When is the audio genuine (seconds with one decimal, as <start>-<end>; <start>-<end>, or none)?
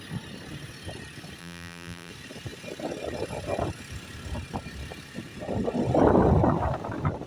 0.0-1.4; 2.1-7.3